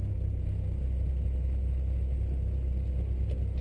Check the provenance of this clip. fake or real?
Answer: real